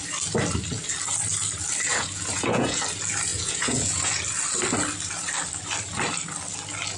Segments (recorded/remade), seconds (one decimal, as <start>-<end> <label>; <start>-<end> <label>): 0.0-1.9 recorded; 1.9-2.8 remade; 2.8-3.3 recorded; 3.3-4.1 remade; 4.1-7.0 recorded